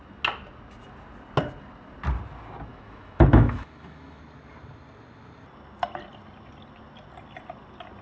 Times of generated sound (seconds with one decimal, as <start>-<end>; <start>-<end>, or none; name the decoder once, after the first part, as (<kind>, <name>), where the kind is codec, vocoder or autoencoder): 2.7-4.2 (autoencoder, DAC-VAE)